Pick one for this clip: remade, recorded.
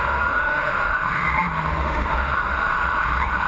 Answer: remade